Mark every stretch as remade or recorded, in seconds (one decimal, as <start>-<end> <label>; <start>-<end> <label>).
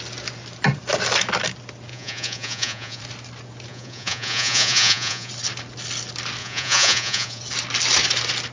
0.0-1.9 recorded; 1.9-3.0 remade; 3.0-3.7 recorded; 3.7-5.3 remade; 5.3-6.4 recorded; 6.4-7.4 remade; 7.4-8.5 recorded